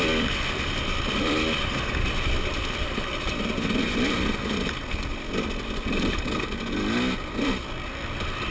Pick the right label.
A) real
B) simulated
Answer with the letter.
A